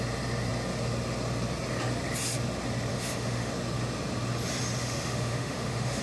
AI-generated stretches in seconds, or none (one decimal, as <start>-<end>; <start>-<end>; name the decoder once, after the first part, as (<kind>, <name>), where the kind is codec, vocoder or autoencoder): 2.9-3.5 (autoencoder, DAC-VAE); 4.8-6.0